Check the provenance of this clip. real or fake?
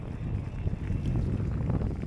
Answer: real